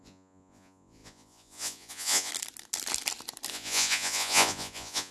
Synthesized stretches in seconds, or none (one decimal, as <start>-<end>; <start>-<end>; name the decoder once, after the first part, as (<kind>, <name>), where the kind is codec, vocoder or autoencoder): 0.0-2.3 (vocoder, Vocos); 3.5-5.1